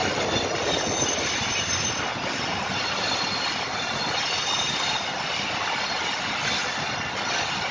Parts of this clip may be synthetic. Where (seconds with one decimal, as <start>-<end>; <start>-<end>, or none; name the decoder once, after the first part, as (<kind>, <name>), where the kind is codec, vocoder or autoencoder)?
none

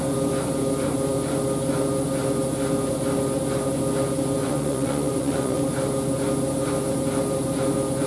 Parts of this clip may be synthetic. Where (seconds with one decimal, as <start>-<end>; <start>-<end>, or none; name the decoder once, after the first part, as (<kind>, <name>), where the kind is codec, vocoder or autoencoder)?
4.4-5.6 (vocoder, Vocos)

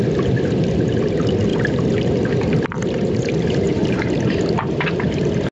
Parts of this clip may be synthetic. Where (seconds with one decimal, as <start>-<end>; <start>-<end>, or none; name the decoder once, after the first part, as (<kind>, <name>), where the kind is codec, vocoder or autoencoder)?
1.5-2.1 (vocoder, BigVGAN v2); 2.8-5.5

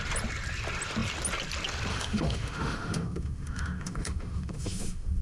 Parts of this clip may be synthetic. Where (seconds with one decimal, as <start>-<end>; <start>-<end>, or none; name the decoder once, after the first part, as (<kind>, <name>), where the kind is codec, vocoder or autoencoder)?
1.9-5.2 (autoencoder, DAC-VAE)

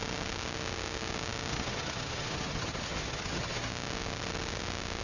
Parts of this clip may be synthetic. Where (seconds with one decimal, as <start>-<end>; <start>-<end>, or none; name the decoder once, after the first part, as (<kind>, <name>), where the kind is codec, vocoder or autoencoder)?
1.5-3.7 (vocoder, HiFi-GAN)

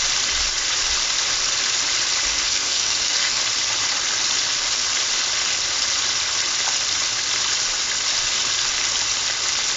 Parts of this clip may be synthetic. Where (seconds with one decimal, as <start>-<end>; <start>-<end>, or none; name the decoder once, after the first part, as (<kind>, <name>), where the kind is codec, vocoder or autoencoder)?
2.3-3.4 (codec, SNAC)

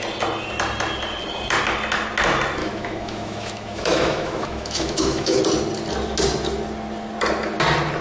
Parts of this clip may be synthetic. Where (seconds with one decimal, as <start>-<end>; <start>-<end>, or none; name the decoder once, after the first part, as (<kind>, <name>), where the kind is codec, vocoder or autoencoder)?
2.6-5.4 (autoencoder, DAC-VAE)

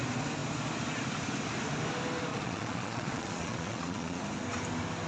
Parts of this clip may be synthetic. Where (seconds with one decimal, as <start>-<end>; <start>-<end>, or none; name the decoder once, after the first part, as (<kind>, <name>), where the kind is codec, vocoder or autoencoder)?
2.3-4.2 (vocoder, Vocos)